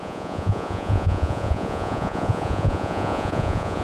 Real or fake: fake